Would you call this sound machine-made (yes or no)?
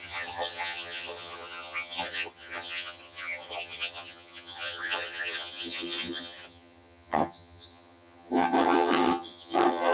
yes